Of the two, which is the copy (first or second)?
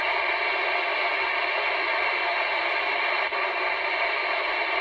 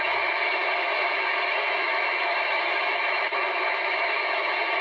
second